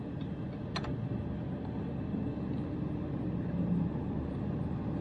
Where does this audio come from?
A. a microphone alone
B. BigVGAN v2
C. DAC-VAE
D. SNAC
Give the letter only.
A